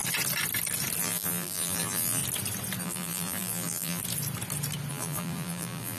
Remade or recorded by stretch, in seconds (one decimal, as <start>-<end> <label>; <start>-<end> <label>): 0.0-1.0 recorded; 1.0-2.2 remade; 2.2-2.8 recorded; 2.8-4.0 remade; 4.0-4.9 recorded; 4.9-6.0 remade